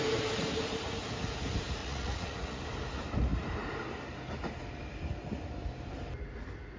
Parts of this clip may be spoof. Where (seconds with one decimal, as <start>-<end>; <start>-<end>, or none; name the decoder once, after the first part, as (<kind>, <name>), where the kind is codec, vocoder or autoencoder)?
1.8-2.6 (vocoder, Vocos)